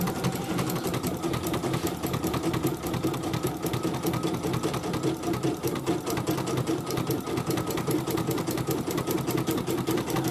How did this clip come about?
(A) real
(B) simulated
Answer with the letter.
A